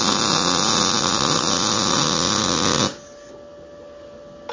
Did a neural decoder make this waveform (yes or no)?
no